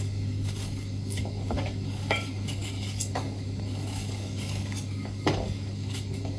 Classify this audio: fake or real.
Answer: fake